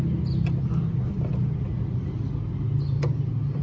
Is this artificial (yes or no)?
no